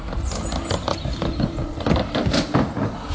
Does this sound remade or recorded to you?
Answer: recorded